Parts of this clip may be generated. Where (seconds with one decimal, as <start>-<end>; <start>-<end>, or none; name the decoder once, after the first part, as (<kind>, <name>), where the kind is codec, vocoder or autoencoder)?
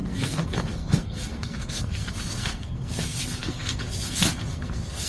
0.0-5.1 (codec, SNAC)